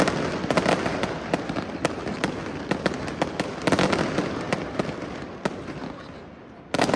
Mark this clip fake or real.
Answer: real